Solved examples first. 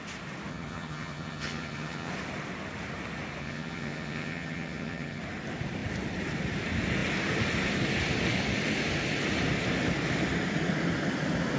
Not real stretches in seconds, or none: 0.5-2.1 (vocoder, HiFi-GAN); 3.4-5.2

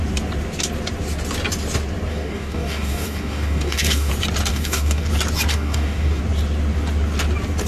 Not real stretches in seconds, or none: 2.1-4.1 (codec, DAC); 4.5-5.1; 5.5-6.2

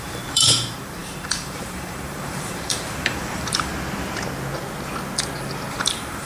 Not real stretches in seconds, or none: 0.0-3.7 (vocoder, BigVGAN v2); 5.7-6.3

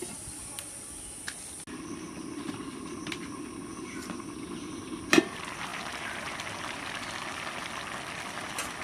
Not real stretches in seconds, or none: none

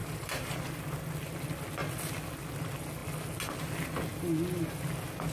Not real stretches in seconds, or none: 0.0-0.6 (vocoder, BigVGAN v2)

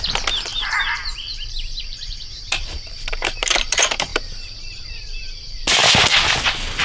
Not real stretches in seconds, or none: 0.0-4.1 (vocoder, BigVGAN v2); 4.9-5.8